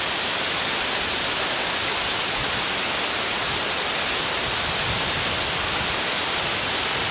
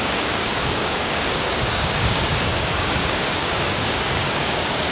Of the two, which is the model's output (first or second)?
second